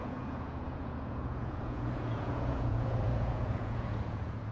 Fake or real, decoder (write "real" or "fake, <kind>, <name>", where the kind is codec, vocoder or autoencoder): fake, vocoder, Vocos